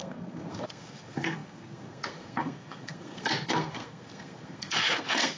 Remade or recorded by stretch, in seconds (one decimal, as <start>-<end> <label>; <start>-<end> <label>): 0.0-5.4 remade